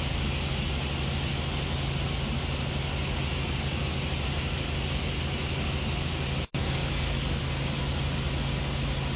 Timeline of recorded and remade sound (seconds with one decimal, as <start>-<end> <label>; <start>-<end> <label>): 0.0-6.6 recorded; 6.6-7.4 remade; 7.4-9.2 recorded